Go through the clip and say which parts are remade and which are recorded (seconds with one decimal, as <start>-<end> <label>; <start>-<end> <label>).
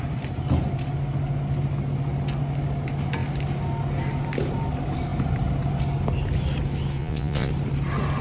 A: 0.0-7.0 recorded; 7.0-7.5 remade; 7.5-8.2 recorded